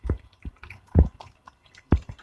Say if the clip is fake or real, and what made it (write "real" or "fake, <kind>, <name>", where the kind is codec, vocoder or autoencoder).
real